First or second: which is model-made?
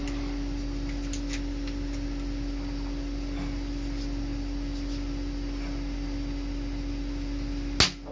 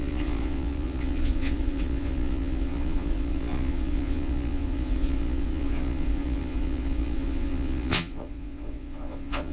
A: second